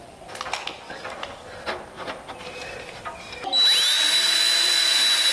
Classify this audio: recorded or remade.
recorded